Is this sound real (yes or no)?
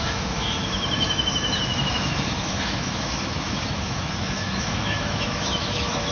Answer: no